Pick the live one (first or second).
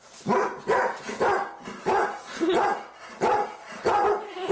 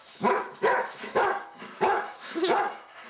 first